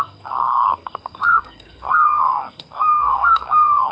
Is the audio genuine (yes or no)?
no